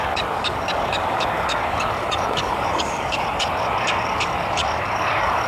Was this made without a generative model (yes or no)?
no